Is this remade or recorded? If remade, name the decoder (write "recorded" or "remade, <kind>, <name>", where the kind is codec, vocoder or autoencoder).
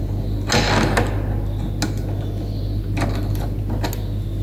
recorded